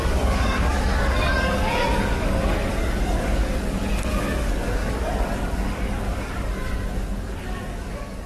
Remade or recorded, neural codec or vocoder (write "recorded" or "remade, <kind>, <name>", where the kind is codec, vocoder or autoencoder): remade, codec, DAC